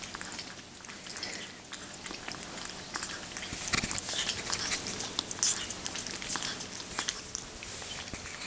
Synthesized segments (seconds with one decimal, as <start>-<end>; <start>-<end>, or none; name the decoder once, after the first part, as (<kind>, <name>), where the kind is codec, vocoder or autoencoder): none